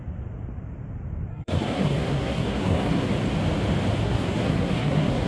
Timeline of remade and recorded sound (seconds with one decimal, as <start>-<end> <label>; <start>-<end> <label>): 0.0-1.3 recorded; 1.3-3.1 remade; 3.1-4.0 recorded; 4.0-5.3 remade